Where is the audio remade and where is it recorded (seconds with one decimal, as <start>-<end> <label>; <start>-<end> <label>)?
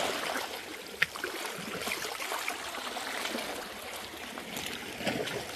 0.0-5.6 recorded